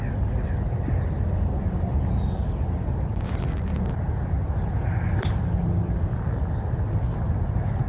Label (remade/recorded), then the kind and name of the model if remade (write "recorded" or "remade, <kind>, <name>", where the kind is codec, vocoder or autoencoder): recorded